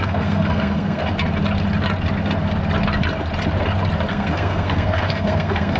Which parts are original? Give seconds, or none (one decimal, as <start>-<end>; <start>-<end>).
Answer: 1.0-4.1